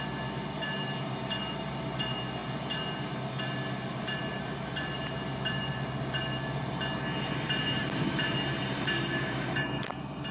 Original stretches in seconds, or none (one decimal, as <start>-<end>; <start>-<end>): 0.0-7.8; 9.8-10.3